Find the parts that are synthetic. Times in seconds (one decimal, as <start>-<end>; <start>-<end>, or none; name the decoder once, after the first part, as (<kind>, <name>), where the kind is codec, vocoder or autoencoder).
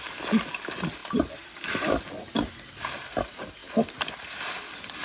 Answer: 1.0-2.0 (vocoder, BigVGAN v2)